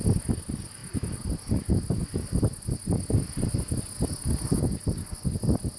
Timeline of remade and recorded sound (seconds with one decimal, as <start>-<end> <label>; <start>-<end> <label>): 0.0-5.8 recorded